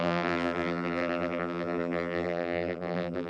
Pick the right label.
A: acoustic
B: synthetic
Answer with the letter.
B